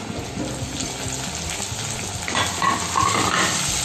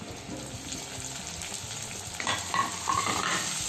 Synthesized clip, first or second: second